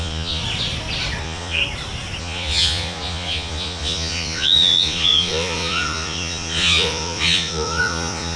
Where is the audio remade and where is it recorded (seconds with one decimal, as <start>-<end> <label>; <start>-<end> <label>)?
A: 0.0-0.4 remade; 0.4-1.2 recorded; 1.2-1.6 remade; 1.6-2.2 recorded; 2.2-8.4 remade